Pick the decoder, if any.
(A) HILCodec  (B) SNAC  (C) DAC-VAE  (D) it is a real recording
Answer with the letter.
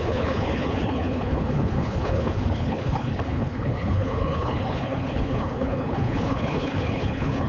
A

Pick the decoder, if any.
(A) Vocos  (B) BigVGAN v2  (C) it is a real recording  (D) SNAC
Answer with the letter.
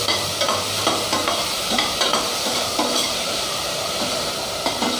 B